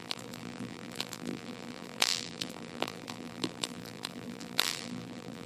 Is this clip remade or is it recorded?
remade